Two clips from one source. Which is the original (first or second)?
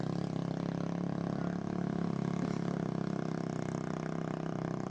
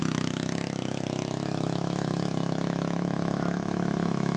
first